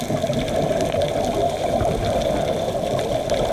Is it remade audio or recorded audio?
recorded